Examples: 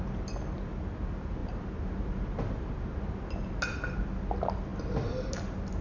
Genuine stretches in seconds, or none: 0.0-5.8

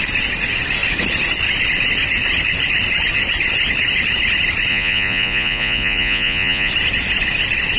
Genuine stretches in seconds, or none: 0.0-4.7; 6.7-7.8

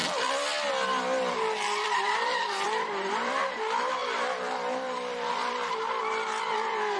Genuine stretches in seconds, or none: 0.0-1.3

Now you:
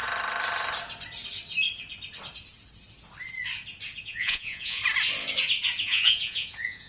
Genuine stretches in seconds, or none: 0.0-4.0; 4.8-5.8